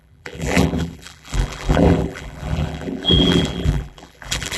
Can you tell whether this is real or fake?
fake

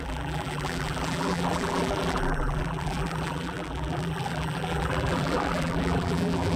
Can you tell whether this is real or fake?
fake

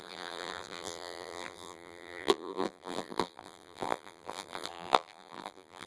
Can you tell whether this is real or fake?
fake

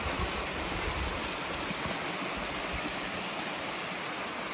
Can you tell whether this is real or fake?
real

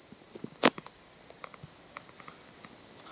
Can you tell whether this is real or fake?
real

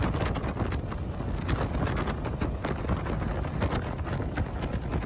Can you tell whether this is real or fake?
real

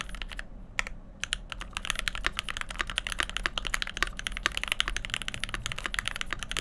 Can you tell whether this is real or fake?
real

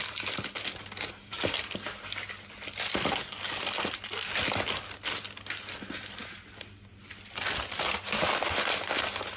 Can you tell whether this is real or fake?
real